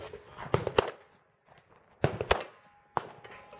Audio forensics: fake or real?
real